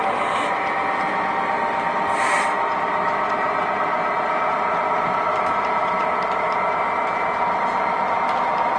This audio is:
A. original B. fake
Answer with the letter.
A